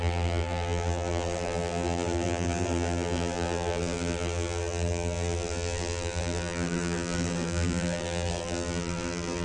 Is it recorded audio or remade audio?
remade